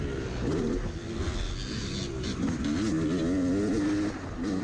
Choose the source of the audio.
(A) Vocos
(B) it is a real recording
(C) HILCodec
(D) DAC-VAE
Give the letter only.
B